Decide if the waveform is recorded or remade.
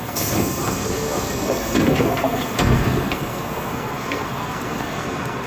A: remade